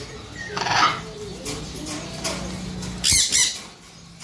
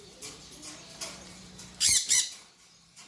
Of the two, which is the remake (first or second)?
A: second